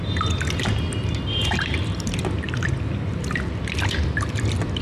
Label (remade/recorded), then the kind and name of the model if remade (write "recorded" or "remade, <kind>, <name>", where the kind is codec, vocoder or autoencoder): remade, vocoder, BigVGAN v2